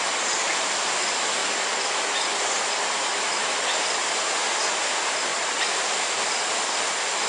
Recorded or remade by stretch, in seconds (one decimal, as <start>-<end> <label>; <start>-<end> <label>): 0.0-7.3 recorded